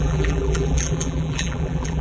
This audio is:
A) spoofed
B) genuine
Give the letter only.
A